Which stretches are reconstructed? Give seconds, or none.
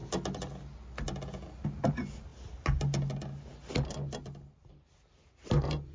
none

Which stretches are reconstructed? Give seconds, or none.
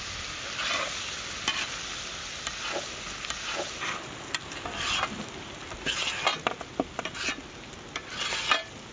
none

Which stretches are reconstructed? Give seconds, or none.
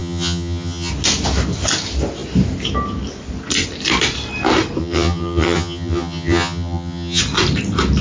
0.0-0.9 (vocoder, HiFi-GAN); 4.8-7.2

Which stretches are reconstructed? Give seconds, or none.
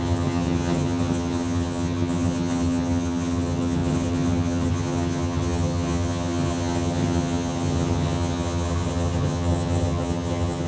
0.0-10.7 (vocoder, HiFi-GAN)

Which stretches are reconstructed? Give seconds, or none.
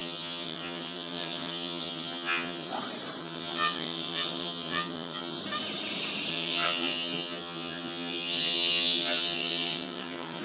0.0-2.7 (vocoder, HiFi-GAN); 3.2-5.4; 6.3-10.4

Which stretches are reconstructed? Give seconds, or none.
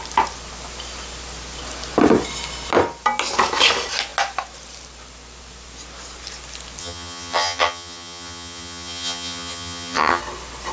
6.8-10.2 (vocoder, HiFi-GAN)